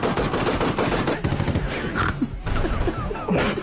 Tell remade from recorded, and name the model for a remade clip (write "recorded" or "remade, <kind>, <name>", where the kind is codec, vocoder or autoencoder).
recorded